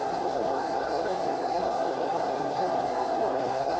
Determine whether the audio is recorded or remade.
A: remade